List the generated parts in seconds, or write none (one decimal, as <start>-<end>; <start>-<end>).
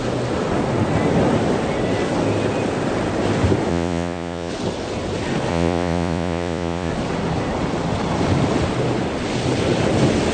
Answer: 3.7-4.5; 5.5-6.9